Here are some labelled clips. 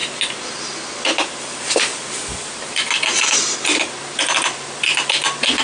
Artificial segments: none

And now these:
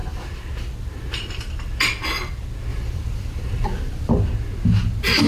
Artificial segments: 2.7-4.1 (vocoder, BigVGAN v2)

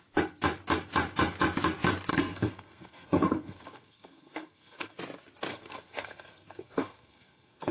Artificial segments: 2.1-5.0 (codec, SNAC); 5.5-7.7

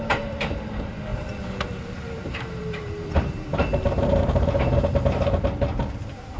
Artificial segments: 0.0-6.4 (vocoder, BigVGAN v2)

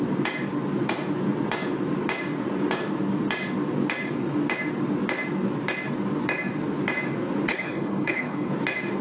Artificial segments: 7.5-8.5 (codec, HILCodec)

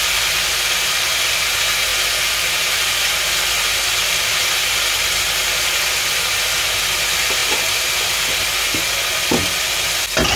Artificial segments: none